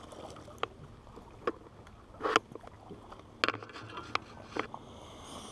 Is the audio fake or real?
real